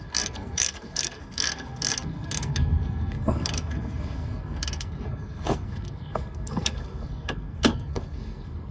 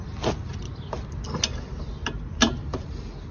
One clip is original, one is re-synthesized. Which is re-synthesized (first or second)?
first